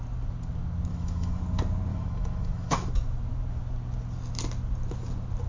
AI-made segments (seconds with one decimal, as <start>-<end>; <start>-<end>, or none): 0.9-1.4; 1.9-2.9